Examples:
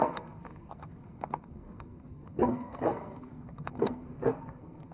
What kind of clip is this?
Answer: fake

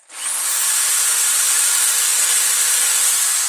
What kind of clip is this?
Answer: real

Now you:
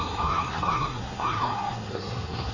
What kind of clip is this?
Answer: fake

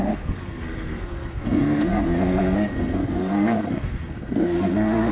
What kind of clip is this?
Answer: fake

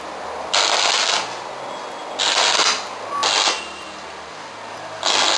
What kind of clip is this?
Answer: real